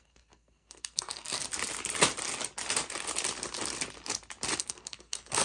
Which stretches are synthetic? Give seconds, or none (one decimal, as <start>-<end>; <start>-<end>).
0.0-1.4; 4.6-5.4